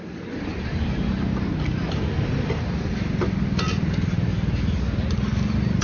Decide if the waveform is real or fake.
real